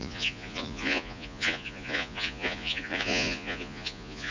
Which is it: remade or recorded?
remade